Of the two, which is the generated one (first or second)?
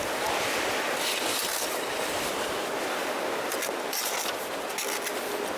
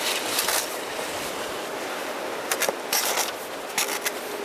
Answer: second